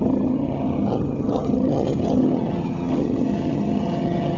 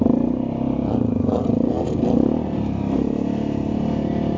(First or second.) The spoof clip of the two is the first